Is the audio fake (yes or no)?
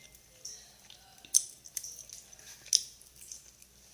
no